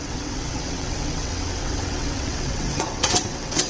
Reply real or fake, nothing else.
fake